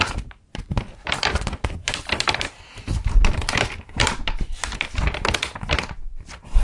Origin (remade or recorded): remade